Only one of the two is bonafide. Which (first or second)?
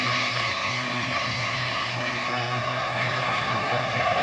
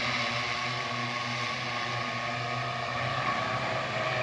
second